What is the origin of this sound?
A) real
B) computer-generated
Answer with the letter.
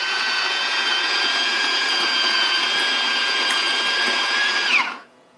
B